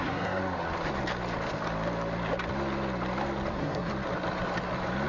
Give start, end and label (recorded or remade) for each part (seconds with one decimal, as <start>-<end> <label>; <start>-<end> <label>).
0.0-0.4 remade; 0.4-3.5 recorded; 3.5-3.9 remade; 3.9-5.1 recorded